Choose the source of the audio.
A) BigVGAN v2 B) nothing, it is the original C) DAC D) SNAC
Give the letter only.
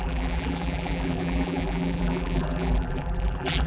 A